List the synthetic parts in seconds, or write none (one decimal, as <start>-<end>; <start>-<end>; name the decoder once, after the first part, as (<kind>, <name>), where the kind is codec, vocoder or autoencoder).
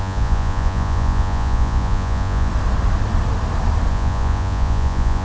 0.0-2.5 (vocoder, Vocos); 3.9-5.2